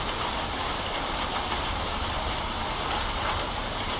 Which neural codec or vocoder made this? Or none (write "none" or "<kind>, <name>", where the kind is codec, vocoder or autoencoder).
vocoder, BigVGAN v2